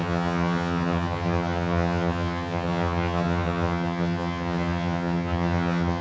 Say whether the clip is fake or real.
fake